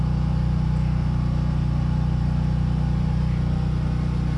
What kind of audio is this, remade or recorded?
recorded